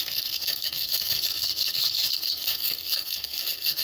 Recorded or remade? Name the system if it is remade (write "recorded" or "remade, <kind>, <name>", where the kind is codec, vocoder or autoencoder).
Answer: remade, codec, SNAC